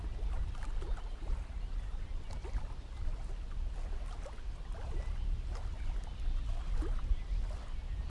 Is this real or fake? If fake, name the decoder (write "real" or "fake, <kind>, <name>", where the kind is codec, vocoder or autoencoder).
real